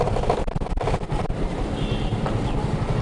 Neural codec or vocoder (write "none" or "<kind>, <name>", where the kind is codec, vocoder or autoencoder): none